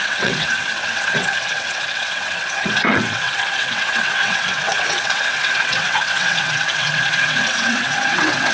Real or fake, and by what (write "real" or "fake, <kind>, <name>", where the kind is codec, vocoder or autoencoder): fake, vocoder, WaveNeXt